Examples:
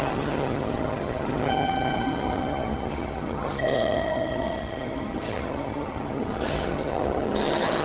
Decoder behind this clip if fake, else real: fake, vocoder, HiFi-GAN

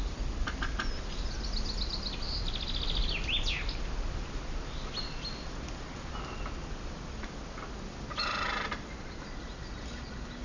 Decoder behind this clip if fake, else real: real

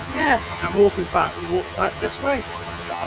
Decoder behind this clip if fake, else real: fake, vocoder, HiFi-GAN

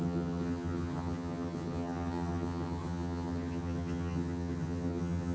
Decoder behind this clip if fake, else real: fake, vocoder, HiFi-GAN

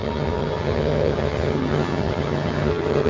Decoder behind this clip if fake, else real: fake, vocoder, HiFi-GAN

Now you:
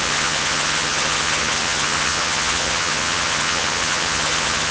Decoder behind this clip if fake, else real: fake, vocoder, HiFi-GAN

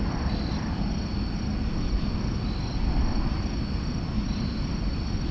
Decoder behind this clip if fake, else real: real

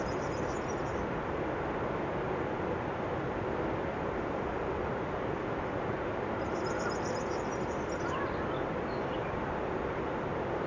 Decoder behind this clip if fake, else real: real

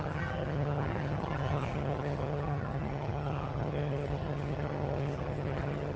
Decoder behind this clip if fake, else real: fake, vocoder, HiFi-GAN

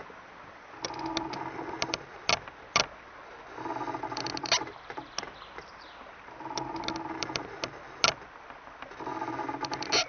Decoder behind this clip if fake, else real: real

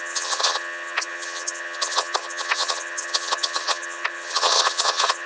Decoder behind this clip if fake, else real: fake, vocoder, HiFi-GAN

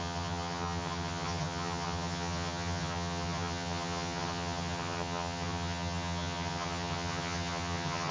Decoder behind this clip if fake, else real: fake, vocoder, HiFi-GAN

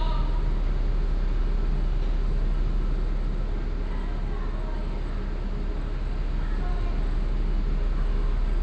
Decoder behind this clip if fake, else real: real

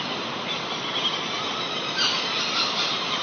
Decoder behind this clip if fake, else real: real